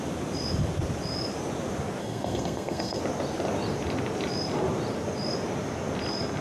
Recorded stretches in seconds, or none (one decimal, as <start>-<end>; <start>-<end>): 0.0-2.0; 3.0-6.4